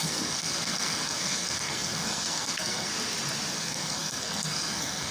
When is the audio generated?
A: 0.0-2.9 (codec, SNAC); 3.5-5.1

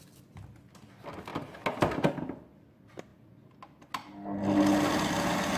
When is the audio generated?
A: none

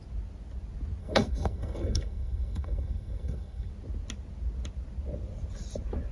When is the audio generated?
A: 1.0-3.7 (codec, SNAC)

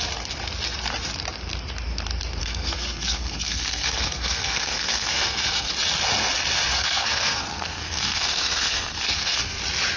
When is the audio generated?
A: 2.4-5.7 (codec, SNAC); 6.7-9.6

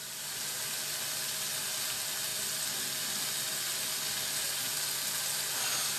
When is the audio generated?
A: none